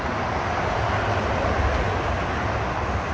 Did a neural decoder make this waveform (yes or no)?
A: no